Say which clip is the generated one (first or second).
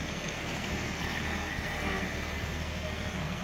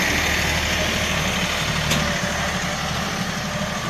first